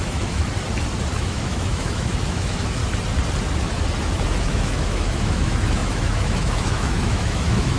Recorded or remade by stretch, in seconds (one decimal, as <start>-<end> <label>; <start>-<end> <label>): 0.0-0.5 remade; 0.5-1.1 recorded; 1.1-2.8 remade; 2.8-4.4 recorded; 4.4-7.8 remade